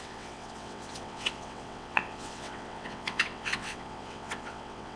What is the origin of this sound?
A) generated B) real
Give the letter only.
A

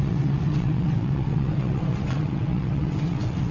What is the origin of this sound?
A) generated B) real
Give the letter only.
A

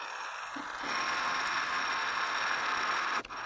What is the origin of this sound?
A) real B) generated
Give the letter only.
A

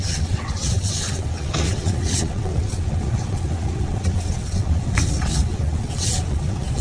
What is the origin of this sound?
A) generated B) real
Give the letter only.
A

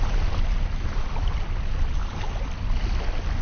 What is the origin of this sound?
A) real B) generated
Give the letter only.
A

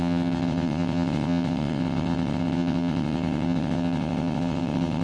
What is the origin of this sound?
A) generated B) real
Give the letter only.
A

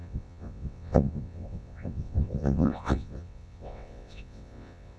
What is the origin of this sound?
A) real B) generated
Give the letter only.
B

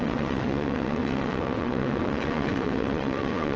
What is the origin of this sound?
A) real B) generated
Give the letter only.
B